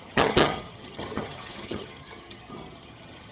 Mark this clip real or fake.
fake